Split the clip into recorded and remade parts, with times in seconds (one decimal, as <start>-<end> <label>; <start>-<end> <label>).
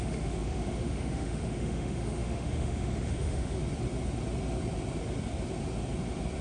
0.0-3.6 remade; 3.6-6.4 recorded